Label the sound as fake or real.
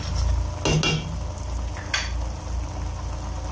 real